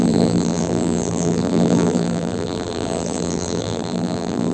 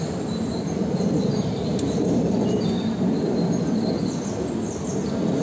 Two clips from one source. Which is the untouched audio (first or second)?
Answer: second